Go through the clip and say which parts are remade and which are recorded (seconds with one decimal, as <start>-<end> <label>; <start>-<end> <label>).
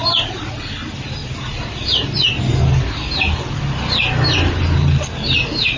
0.0-5.8 recorded